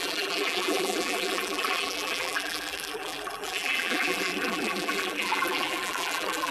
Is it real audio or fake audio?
fake